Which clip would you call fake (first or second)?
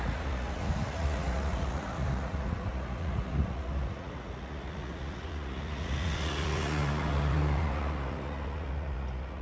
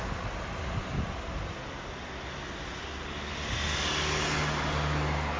first